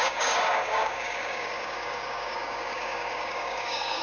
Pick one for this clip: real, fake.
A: fake